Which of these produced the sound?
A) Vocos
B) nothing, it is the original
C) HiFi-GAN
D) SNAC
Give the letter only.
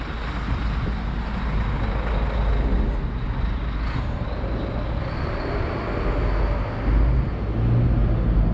B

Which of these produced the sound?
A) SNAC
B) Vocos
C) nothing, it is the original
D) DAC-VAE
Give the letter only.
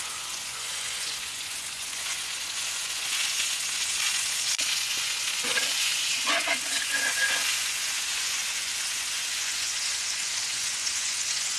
B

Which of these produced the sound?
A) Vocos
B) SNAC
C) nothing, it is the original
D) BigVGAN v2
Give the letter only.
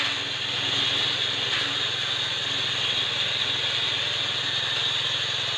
C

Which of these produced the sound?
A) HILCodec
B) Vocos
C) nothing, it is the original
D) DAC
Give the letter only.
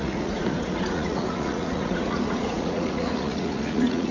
B